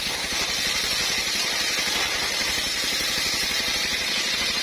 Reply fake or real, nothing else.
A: real